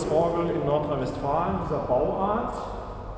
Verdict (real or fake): real